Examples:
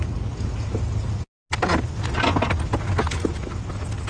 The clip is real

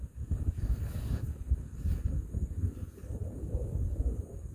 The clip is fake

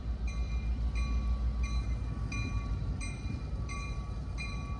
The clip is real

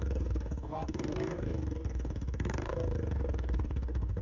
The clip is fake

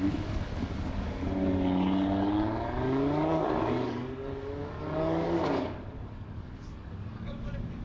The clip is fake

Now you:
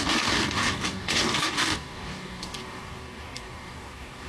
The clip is fake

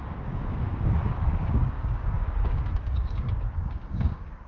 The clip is fake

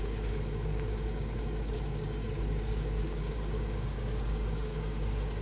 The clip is fake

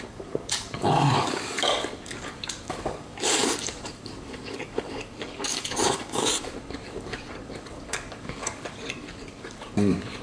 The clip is fake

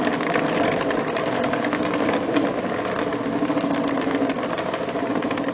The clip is real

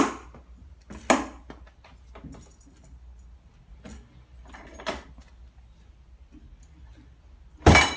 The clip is real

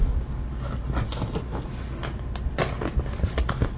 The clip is real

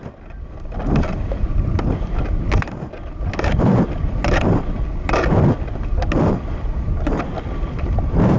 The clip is real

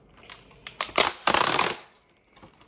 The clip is real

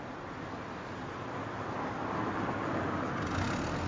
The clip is real